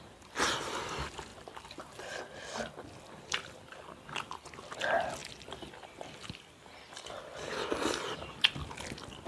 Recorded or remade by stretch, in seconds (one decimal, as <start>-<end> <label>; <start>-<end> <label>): 0.0-5.2 recorded; 5.2-7.2 remade; 7.2-9.3 recorded